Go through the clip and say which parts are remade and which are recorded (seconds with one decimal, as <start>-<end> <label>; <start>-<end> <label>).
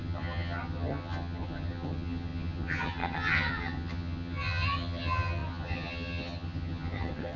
0.0-7.4 remade